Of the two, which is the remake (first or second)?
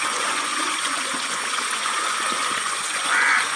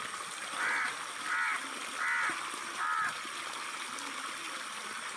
first